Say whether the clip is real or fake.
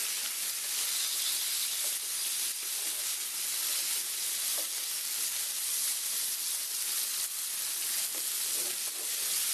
real